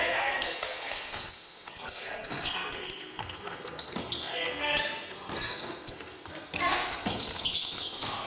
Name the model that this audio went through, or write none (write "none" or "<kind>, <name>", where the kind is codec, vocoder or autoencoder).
codec, SNAC